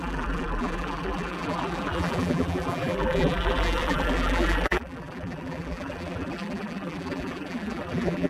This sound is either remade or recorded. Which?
remade